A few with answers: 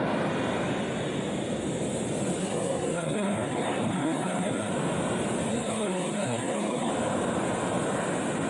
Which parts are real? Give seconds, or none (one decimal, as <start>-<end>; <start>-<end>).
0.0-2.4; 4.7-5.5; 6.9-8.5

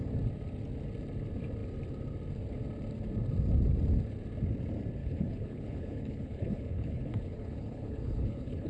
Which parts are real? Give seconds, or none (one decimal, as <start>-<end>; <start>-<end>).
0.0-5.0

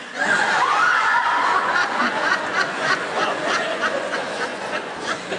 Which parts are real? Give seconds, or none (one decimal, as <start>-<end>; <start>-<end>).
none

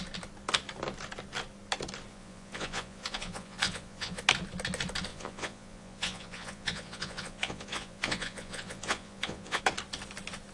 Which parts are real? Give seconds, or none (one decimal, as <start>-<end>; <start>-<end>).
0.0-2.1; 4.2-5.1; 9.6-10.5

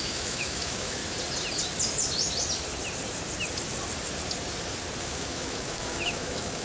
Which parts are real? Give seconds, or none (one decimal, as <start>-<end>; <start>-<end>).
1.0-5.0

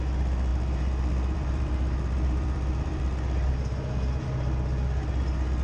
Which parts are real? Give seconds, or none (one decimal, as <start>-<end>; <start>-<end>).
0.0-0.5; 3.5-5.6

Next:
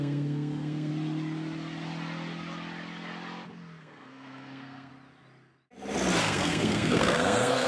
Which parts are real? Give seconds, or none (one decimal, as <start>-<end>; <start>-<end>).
0.9-3.8; 4.9-6.2

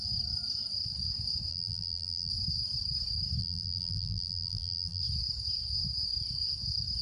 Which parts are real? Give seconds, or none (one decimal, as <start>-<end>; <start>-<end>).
0.0-1.5; 2.3-3.4; 5.0-7.0